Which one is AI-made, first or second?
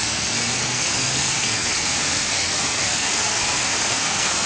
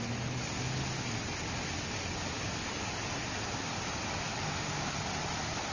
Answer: first